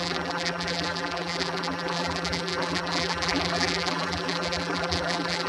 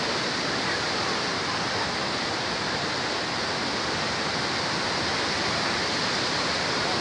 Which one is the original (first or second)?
second